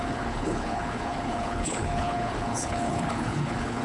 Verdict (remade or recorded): remade